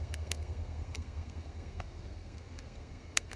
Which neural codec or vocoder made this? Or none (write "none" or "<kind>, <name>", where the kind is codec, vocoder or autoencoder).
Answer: codec, SNAC